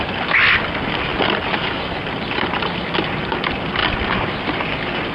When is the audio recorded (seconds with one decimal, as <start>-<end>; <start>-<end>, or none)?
0.0-5.1

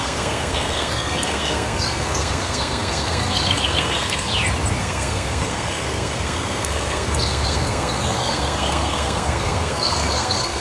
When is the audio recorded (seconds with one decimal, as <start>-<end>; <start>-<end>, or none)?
4.3-4.8

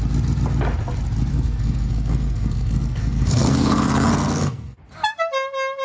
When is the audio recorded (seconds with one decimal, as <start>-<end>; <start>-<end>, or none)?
0.0-1.3; 4.8-5.8

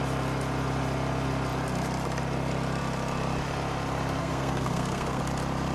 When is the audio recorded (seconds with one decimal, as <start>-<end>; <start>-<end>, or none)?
0.0-4.2; 5.2-5.7

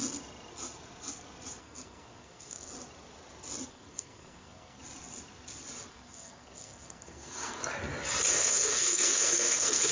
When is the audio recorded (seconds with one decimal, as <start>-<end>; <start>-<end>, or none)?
0.0-1.6; 2.7-3.7; 4.8-5.9; 7.6-8.3

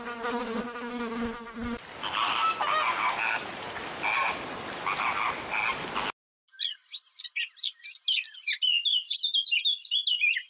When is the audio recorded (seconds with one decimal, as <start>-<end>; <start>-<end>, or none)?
0.0-10.5